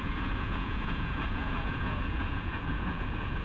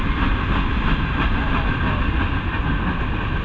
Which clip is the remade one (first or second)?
first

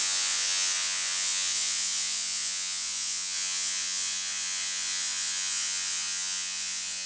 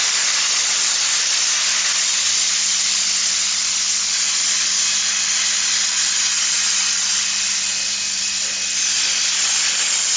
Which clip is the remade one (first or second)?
first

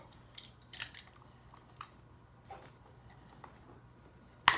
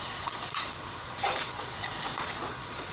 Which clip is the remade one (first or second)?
second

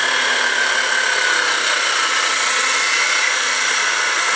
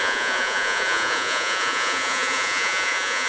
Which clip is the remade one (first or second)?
second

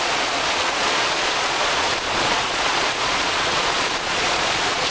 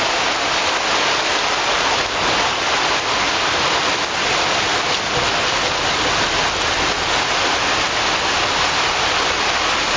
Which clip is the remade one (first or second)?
first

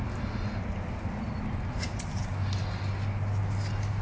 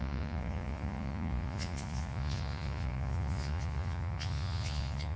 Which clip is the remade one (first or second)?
second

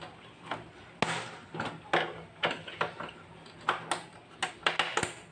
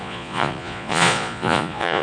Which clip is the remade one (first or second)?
second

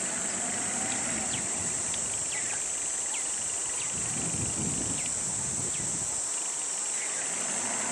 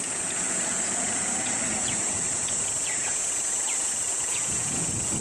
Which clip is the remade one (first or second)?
second